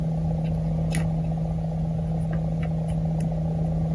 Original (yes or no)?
yes